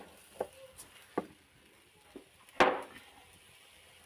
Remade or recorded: recorded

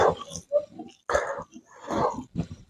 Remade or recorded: recorded